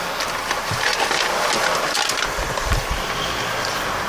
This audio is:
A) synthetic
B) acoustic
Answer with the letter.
B